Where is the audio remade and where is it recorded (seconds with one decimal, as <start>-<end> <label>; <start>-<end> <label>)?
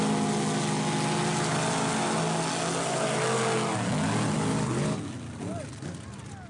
0.0-6.5 recorded